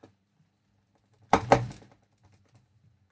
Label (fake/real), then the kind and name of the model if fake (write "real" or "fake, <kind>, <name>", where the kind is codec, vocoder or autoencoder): fake, vocoder, BigVGAN v2